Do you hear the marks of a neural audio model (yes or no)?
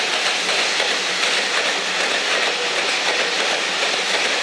no